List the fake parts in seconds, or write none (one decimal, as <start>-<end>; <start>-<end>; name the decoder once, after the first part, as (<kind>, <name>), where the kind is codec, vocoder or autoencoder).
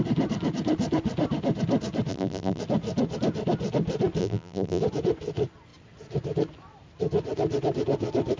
2.1-2.6 (vocoder, BigVGAN v2); 4.2-4.8